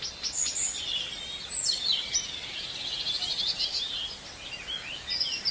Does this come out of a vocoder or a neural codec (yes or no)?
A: no